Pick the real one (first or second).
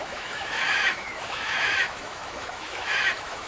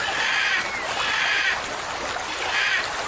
second